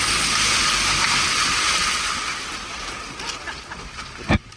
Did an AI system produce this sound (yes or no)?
no